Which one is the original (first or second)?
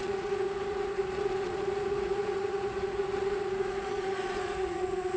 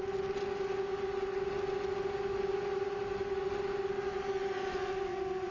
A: second